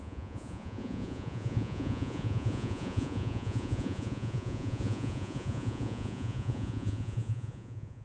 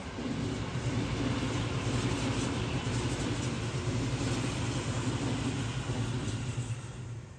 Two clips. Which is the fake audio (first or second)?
first